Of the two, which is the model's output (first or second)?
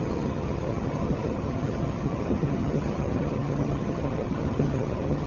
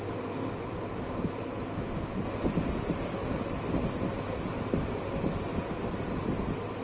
first